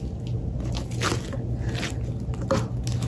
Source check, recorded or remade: recorded